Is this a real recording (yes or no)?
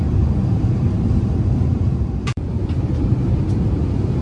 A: no